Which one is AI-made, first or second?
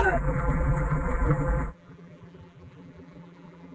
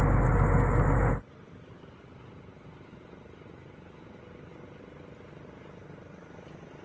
first